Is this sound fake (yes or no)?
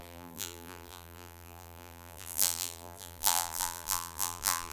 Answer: yes